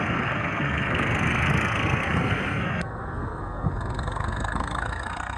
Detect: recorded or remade remade